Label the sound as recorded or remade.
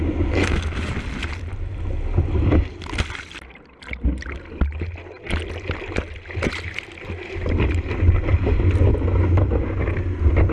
recorded